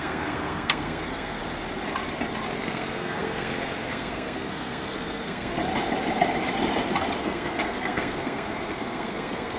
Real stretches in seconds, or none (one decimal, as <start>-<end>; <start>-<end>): 1.4-2.6; 5.6-7.2